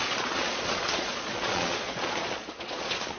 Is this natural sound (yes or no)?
no